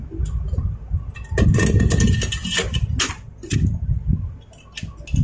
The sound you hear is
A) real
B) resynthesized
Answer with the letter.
A